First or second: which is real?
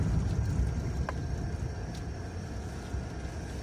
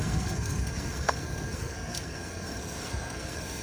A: first